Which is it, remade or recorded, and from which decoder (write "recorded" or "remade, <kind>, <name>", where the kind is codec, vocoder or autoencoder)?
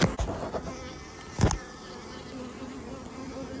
recorded